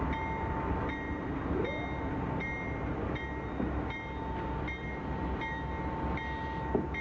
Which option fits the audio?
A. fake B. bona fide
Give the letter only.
B